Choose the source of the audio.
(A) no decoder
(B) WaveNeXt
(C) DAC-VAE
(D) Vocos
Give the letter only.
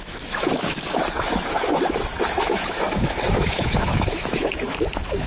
C